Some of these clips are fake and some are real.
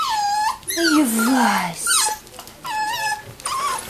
real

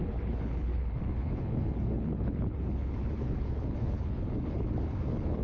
fake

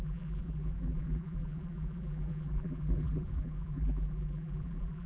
fake